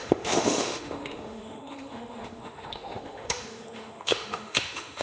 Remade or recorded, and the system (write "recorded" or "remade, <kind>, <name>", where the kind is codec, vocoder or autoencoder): remade, autoencoder, DAC-VAE